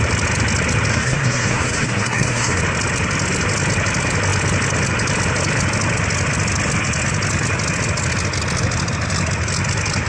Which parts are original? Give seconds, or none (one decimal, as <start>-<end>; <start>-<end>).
0.0-0.9; 2.6-10.1